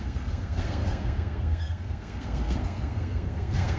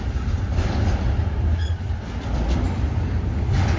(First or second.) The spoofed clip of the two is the first